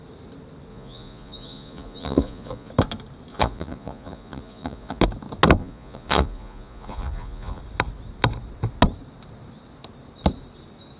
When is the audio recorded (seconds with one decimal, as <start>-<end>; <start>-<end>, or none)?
0.0-0.7; 2.7-3.3; 5.0-5.6; 7.6-11.0